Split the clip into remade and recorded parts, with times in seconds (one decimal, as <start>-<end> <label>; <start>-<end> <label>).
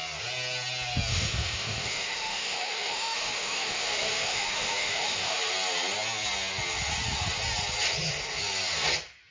0.0-1.1 recorded; 1.1-5.4 remade; 5.4-9.3 recorded